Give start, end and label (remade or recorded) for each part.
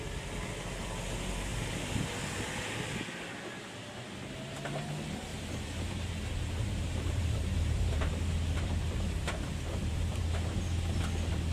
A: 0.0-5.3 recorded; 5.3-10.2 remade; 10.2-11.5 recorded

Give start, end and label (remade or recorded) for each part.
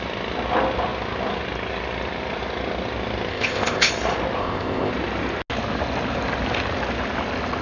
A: 0.0-3.3 recorded; 3.3-3.9 remade; 3.9-4.4 recorded; 4.4-4.9 remade; 4.9-7.6 recorded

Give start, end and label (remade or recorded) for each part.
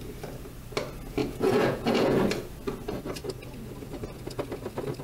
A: 0.0-1.2 recorded; 1.2-2.2 remade; 2.2-5.0 recorded